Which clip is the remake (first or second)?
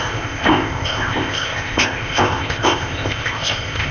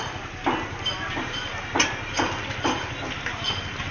first